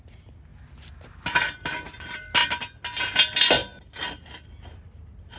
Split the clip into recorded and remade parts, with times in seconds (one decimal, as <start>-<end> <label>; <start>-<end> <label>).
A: 0.0-5.4 recorded